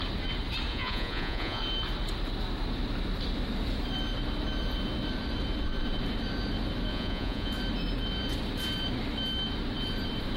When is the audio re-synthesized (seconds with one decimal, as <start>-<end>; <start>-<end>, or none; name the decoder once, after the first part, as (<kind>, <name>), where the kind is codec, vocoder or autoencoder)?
0.7-1.6 (vocoder, Vocos); 6.9-7.5